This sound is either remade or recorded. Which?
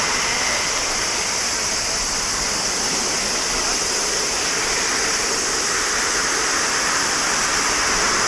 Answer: recorded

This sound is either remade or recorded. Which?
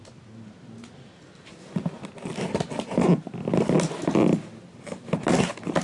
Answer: recorded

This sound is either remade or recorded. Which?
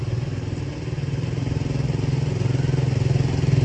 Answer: recorded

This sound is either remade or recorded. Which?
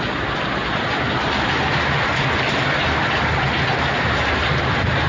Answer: recorded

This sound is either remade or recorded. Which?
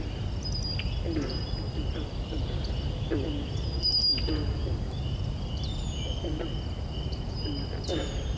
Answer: recorded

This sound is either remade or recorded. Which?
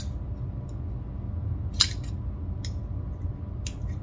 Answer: recorded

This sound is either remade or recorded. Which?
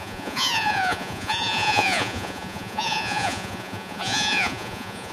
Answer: remade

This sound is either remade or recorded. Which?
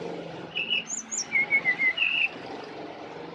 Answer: recorded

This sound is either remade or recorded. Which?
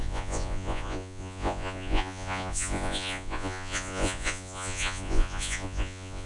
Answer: remade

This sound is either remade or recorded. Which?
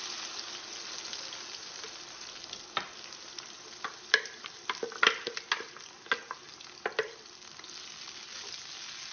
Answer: recorded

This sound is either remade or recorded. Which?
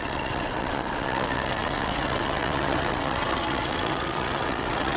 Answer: remade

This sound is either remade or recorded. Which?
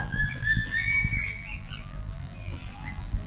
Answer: remade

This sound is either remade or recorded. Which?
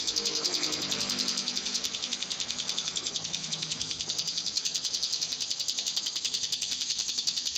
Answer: remade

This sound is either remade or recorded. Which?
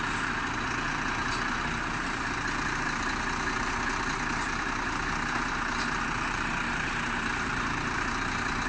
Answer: recorded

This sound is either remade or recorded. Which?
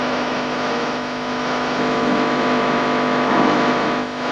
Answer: remade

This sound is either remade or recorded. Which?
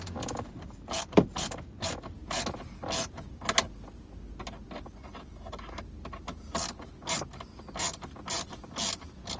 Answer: recorded